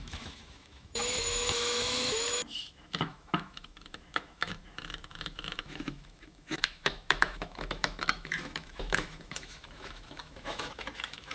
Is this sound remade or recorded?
remade